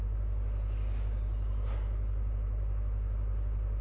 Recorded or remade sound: recorded